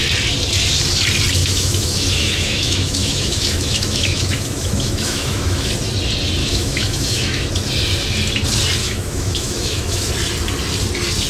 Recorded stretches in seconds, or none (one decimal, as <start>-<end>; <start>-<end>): 0.0-1.4; 5.7-6.4; 7.5-8.8; 10.1-11.3